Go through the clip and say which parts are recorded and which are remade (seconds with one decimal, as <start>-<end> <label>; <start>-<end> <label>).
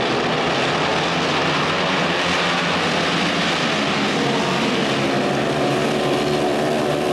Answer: 0.0-7.1 recorded